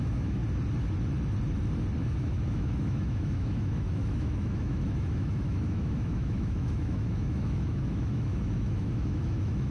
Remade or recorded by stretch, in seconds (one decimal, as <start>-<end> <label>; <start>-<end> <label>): 0.0-0.4 remade; 0.4-2.0 recorded; 2.0-9.7 remade